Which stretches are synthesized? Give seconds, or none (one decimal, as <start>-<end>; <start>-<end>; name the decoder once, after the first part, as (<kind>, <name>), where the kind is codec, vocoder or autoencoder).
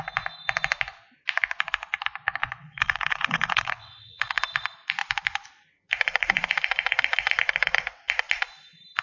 2.4-4.4 (vocoder, WaveNeXt)